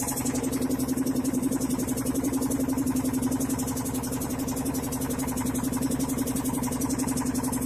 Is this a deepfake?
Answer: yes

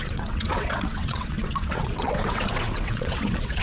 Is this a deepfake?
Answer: yes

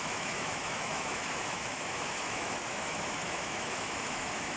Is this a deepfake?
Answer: yes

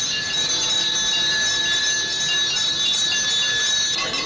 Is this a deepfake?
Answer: no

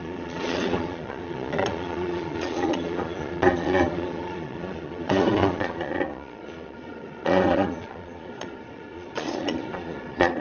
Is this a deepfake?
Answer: yes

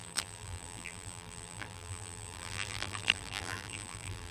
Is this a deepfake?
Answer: yes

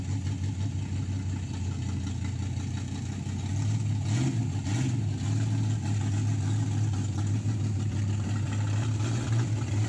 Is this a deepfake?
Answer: no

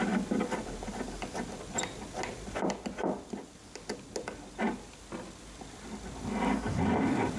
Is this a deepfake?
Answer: no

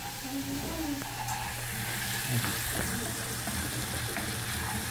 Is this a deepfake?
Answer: no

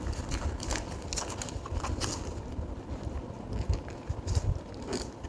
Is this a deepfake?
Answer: no